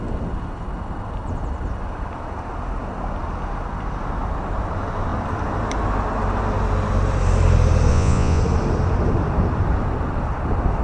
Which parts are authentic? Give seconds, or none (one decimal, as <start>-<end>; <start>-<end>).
0.0-7.9; 8.4-10.8